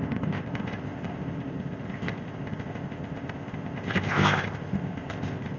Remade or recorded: remade